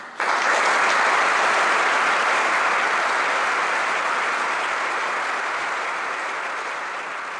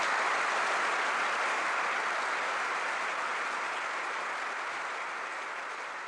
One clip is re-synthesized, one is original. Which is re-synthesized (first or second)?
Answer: second